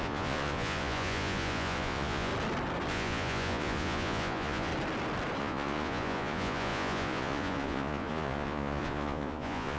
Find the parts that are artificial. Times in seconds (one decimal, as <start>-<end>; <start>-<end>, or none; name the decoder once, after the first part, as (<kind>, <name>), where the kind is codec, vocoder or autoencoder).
0.0-2.3 (vocoder, Vocos); 2.9-4.7; 5.4-9.8